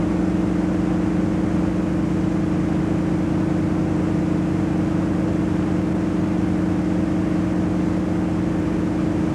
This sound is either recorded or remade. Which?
recorded